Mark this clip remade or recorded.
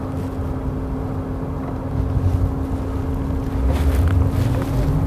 recorded